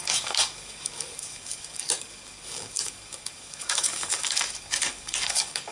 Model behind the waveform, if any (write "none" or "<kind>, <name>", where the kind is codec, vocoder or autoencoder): codec, DAC